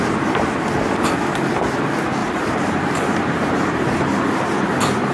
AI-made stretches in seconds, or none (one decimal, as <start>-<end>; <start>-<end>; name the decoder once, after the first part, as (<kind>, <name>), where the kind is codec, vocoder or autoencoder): 2.2-4.2 (vocoder, BigVGAN v2)